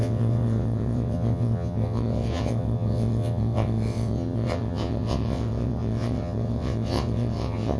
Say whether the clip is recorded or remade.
remade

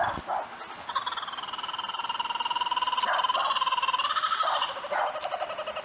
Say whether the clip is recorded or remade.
recorded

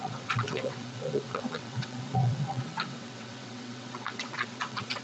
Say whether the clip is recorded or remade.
remade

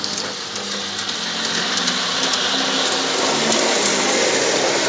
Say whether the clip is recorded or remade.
recorded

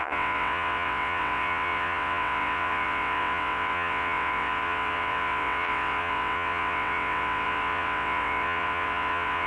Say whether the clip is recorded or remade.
remade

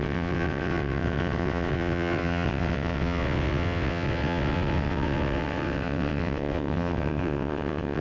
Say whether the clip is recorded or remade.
remade